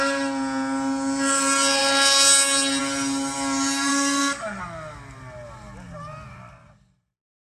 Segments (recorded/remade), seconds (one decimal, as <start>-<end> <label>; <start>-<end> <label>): 0.0-3.9 recorded; 3.9-4.6 remade; 4.6-7.4 recorded